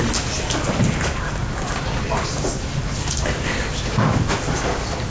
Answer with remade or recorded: recorded